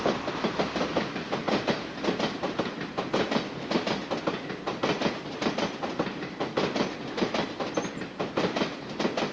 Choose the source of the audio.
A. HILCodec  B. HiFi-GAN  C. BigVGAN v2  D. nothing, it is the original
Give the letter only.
D